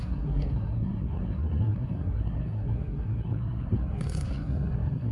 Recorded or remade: remade